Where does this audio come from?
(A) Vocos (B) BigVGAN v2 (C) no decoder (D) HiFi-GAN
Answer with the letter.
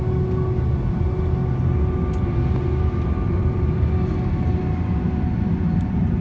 C